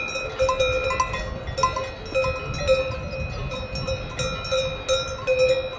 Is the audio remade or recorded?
recorded